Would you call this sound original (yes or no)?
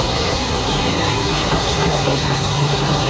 no